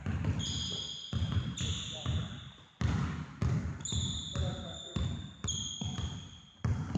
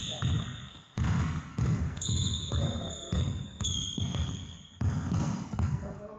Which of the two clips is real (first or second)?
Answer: first